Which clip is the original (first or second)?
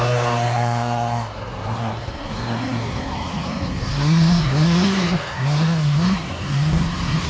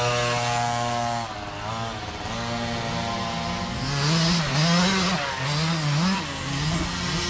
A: second